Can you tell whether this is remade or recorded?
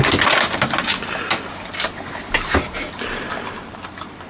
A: recorded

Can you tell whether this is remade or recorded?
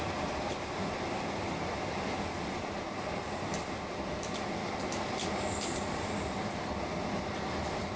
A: recorded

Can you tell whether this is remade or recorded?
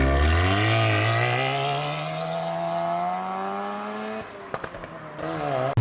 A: recorded